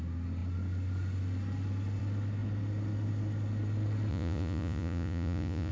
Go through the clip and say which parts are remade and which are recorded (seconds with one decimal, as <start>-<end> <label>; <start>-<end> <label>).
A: 0.0-4.1 recorded; 4.1-5.7 remade